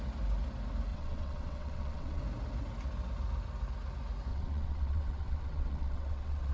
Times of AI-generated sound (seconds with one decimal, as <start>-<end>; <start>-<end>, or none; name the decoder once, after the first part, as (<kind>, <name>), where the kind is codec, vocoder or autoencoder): 0.9-2.2 (vocoder, WaveNeXt); 4.3-6.5